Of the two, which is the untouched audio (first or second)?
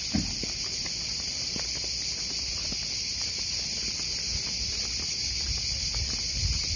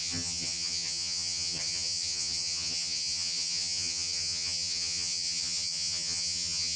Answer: first